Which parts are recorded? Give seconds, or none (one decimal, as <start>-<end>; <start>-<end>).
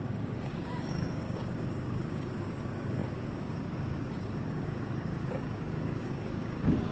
none